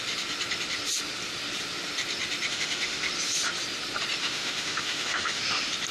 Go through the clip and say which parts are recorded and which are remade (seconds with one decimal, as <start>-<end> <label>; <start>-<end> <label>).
0.0-2.5 recorded; 2.5-3.1 remade; 3.1-4.2 recorded; 4.2-5.4 remade; 5.4-5.9 recorded